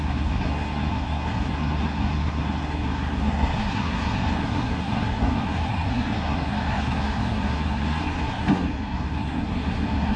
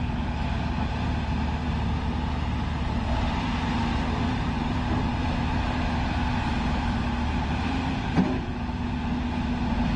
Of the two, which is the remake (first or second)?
first